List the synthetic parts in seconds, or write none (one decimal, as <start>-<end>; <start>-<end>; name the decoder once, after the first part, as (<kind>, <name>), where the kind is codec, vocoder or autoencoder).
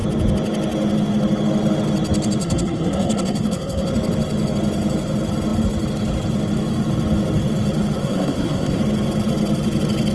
2.4-3.9 (codec, SNAC); 8.0-8.8